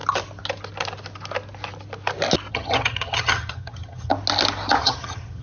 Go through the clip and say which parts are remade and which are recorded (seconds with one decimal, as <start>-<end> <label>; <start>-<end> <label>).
0.0-2.5 recorded; 2.5-4.1 remade; 4.1-4.8 recorded; 4.8-5.4 remade